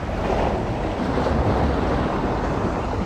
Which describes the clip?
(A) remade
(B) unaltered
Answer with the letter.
B